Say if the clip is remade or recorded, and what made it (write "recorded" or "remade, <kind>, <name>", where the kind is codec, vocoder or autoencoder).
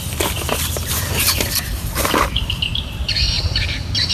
remade, vocoder, BigVGAN v2